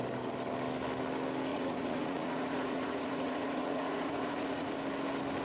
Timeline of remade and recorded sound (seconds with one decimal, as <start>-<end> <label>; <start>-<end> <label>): 0.0-1.5 recorded; 1.5-4.7 remade; 4.7-5.4 recorded